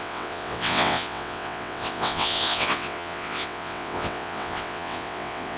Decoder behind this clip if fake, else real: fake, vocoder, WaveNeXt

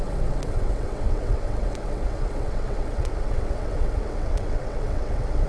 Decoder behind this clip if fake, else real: fake, vocoder, WaveNeXt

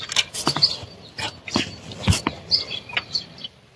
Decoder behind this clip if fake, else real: real